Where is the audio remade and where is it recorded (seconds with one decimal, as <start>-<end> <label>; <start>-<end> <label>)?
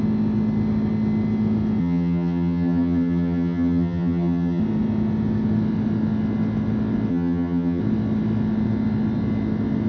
0.0-1.8 recorded; 1.8-4.6 remade; 4.6-7.1 recorded; 7.1-7.8 remade; 7.8-9.9 recorded